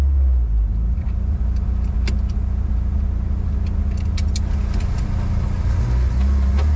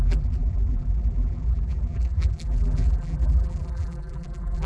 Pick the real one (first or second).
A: first